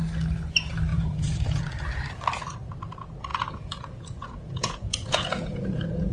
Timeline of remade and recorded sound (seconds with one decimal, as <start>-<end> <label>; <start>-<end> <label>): 0.0-0.9 recorded; 0.9-1.6 remade; 1.6-3.3 recorded; 3.3-6.1 remade